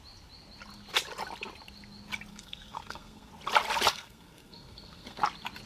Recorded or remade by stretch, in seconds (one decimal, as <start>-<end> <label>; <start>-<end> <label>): 0.0-2.3 recorded; 2.3-3.3 remade; 3.3-3.9 recorded; 3.9-5.2 remade; 5.2-5.7 recorded